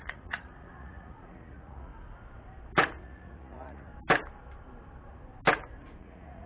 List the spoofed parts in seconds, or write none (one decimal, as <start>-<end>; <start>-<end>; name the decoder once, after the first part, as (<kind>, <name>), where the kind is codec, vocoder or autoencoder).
0.0-1.9 (vocoder, Vocos); 3.0-3.9; 6.0-6.5